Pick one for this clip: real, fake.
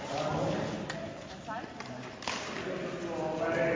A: real